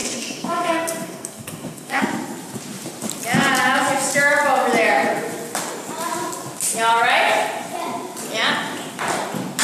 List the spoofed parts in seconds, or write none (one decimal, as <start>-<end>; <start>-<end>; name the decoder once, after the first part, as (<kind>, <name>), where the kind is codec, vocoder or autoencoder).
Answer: 0.0-2.0 (codec, SNAC)